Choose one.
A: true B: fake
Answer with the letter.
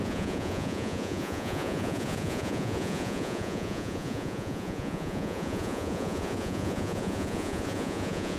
B